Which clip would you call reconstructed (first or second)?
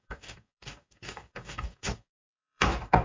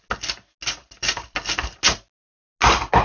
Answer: first